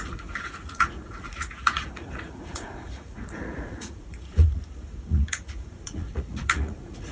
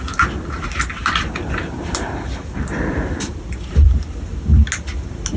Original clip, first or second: second